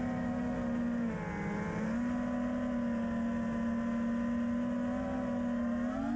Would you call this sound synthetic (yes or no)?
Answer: no